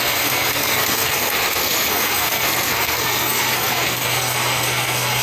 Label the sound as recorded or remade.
remade